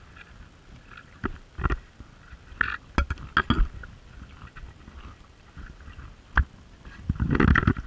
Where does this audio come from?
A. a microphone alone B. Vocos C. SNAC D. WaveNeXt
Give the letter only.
A